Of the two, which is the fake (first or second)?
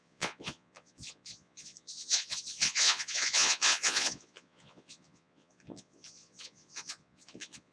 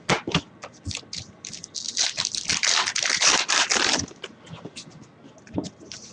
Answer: first